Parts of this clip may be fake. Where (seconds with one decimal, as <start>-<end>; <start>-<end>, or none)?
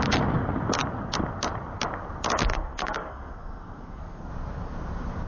2.5-4.3